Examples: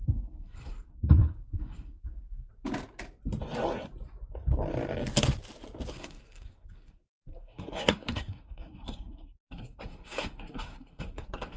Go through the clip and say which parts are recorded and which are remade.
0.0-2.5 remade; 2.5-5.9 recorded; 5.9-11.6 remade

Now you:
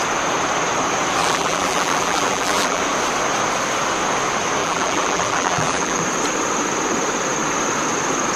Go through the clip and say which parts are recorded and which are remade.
0.0-1.2 recorded; 1.2-2.8 remade; 2.8-4.6 recorded; 4.6-6.0 remade; 6.0-8.4 recorded

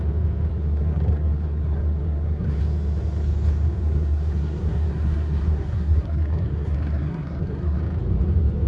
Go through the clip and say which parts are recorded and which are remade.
0.0-0.5 recorded; 0.5-2.6 remade; 2.6-3.8 recorded; 3.8-7.8 remade; 7.8-8.7 recorded

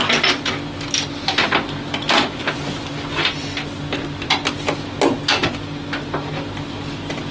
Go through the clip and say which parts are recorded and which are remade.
0.0-7.3 recorded

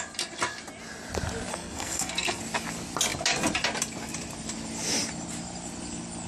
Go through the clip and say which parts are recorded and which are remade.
0.0-1.5 recorded; 1.5-2.4 remade; 2.4-6.3 recorded

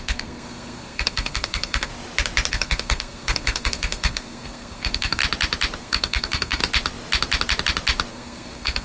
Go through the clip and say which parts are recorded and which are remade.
0.0-1.9 remade; 1.9-2.5 recorded; 2.5-5.2 remade; 5.2-5.8 recorded; 5.8-6.6 remade; 6.6-8.1 recorded; 8.1-8.8 remade

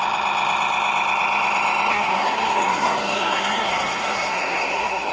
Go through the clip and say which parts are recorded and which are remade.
0.0-1.9 recorded; 1.9-5.1 remade

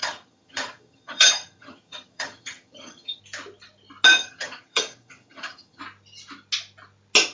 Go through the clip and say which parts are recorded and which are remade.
0.0-3.2 remade; 3.2-4.2 recorded; 4.2-5.8 remade; 5.8-7.3 recorded